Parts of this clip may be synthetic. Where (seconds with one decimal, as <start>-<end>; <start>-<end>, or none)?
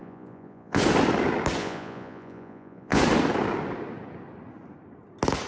0.0-0.8; 1.6-3.0